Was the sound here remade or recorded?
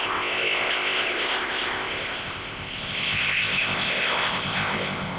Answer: remade